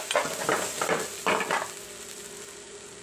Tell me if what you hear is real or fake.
real